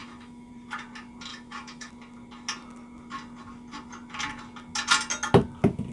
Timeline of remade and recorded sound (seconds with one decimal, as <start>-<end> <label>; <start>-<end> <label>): 0.0-0.5 remade; 0.5-1.3 recorded; 1.3-1.9 remade; 1.9-5.9 recorded